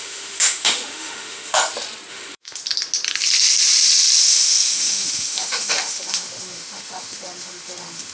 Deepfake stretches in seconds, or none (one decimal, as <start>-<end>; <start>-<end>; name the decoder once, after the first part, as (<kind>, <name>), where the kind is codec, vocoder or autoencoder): 0.0-1.6 (autoencoder, DAC-VAE); 2.1-2.6; 4.2-8.1